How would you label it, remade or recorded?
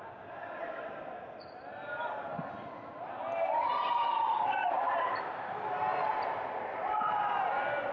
recorded